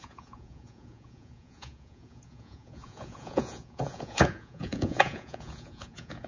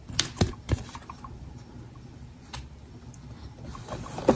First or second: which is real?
second